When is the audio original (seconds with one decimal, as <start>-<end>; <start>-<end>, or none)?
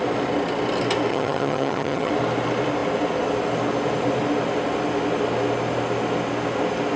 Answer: 0.0-1.1; 2.1-7.0